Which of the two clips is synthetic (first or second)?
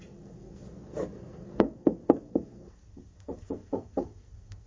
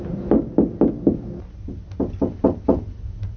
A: first